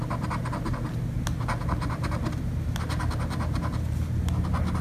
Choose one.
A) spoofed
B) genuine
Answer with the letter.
B